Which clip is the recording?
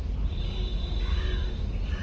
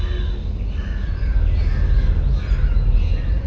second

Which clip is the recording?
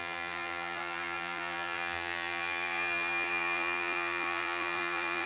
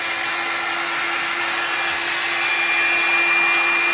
second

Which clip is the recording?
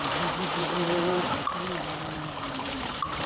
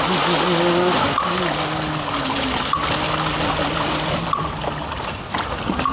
second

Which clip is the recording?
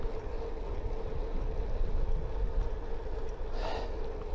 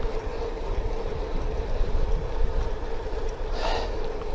first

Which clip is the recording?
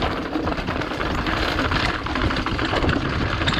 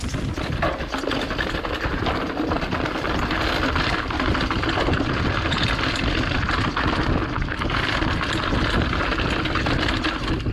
second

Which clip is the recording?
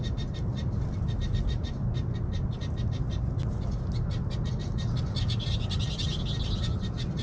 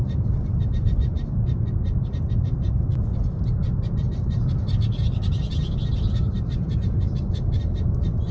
first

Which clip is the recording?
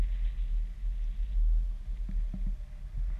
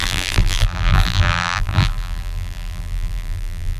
first